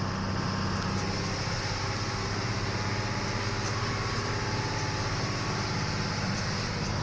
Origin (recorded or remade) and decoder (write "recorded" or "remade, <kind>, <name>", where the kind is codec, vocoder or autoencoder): recorded